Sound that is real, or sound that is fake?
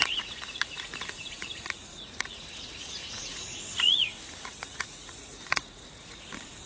fake